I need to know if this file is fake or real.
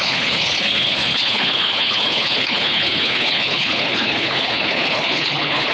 fake